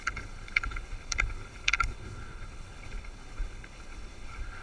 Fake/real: fake